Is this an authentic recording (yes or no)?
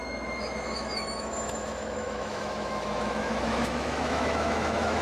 no